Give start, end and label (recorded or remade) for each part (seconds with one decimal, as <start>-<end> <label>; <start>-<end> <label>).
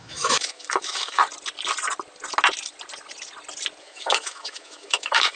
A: 0.0-1.2 remade; 1.2-3.8 recorded; 3.8-5.4 remade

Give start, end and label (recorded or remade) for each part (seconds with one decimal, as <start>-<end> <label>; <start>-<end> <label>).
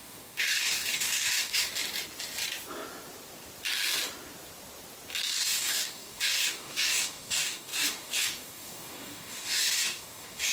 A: 0.0-1.7 remade; 1.7-5.4 recorded; 5.4-10.5 remade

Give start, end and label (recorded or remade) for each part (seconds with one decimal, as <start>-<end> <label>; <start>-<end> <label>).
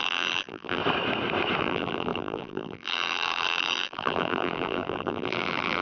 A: 0.0-0.8 remade; 0.8-1.6 recorded; 1.6-5.8 remade